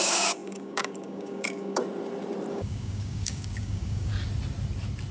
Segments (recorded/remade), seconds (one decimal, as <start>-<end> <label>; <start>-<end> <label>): 0.0-1.8 remade; 1.8-2.5 recorded; 2.5-4.1 remade; 4.1-5.1 recorded